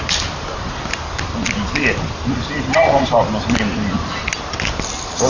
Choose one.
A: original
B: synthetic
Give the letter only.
A